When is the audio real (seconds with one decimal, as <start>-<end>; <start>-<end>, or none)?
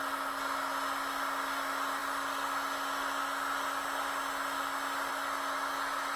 0.0-6.2